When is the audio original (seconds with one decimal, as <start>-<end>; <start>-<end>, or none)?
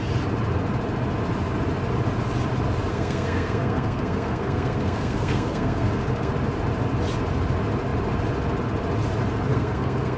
0.0-2.9; 6.3-9.5